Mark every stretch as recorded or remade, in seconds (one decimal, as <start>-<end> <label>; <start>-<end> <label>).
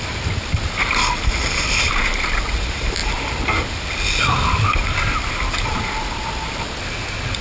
0.0-7.4 recorded